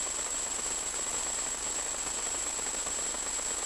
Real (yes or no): yes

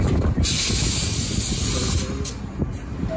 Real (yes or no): yes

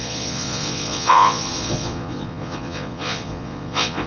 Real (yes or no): no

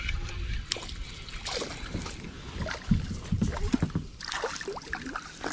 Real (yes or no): yes